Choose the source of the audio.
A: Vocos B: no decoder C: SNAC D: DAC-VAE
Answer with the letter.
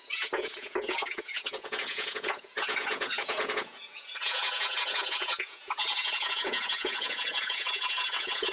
A